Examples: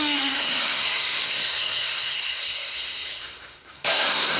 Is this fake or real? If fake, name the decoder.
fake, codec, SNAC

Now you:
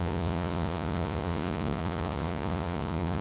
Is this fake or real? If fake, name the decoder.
fake, vocoder, Vocos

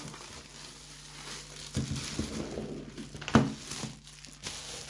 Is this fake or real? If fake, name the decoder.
real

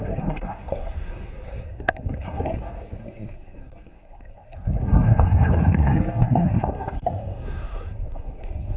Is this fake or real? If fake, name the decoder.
fake, codec, SNAC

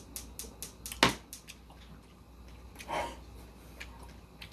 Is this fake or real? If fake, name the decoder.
real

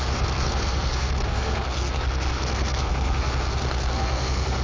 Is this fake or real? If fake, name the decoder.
fake, codec, SNAC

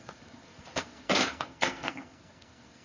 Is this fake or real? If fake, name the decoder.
fake, codec, SNAC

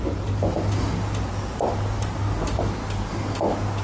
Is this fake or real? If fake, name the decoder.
real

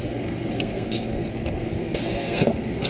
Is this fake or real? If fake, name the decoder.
fake, codec, SNAC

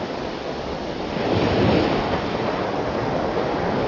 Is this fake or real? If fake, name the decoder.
real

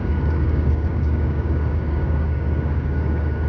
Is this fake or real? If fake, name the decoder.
fake, codec, DAC